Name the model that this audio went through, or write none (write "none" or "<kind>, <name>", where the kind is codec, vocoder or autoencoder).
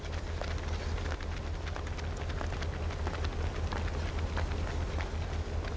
none